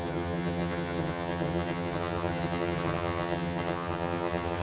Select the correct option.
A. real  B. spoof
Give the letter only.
B